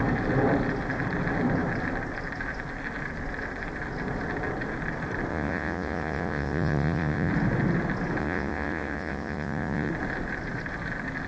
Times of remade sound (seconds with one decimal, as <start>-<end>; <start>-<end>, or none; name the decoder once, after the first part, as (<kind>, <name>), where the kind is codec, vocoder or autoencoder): 5.3-7.3 (vocoder, Vocos); 8.2-9.9